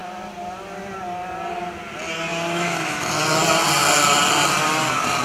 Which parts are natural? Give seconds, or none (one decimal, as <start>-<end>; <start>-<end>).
0.0-2.3; 3.1-5.2